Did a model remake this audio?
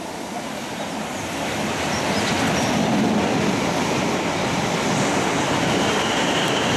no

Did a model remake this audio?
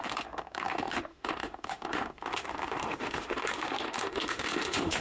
yes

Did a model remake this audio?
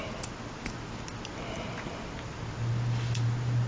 no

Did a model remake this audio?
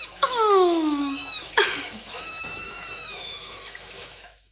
yes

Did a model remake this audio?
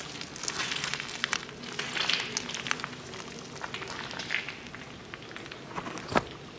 no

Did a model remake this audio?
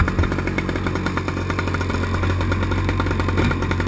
no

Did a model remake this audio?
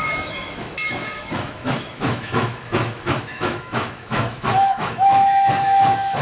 yes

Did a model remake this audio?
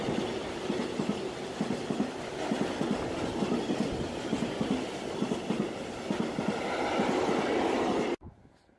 no